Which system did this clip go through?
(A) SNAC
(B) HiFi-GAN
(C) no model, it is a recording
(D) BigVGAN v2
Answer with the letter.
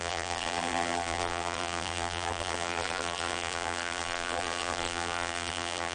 D